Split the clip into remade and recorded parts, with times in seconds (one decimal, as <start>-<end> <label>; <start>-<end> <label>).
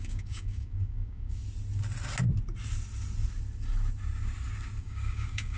0.0-1.4 remade; 1.4-4.8 recorded; 4.8-5.6 remade